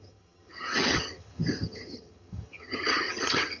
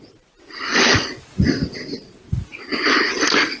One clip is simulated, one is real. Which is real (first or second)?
second